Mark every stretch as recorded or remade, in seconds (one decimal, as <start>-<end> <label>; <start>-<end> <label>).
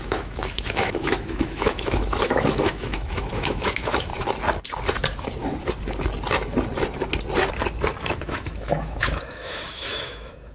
0.0-4.1 remade; 4.1-8.1 recorded; 8.1-10.5 remade